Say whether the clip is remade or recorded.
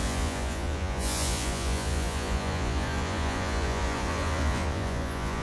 remade